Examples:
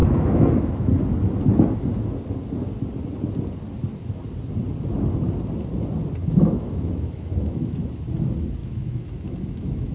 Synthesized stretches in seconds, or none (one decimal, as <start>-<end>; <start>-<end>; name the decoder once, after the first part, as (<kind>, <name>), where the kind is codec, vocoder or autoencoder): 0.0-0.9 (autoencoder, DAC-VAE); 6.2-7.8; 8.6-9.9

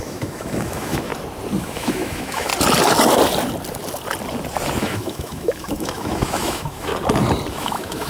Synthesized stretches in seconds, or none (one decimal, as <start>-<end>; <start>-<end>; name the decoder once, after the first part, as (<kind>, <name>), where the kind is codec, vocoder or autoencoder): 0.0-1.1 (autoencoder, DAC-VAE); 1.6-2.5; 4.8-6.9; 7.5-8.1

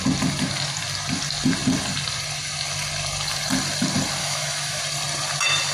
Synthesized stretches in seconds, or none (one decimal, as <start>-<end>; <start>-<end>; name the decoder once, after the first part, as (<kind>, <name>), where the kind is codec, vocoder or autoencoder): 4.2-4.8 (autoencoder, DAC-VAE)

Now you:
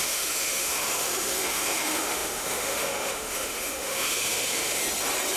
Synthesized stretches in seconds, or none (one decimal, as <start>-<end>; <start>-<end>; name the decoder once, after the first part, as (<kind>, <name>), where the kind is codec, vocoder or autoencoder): 0.0-4.8 (autoencoder, DAC-VAE)

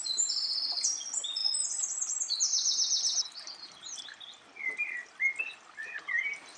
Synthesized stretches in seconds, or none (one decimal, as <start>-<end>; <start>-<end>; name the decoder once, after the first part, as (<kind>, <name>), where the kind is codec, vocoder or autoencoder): none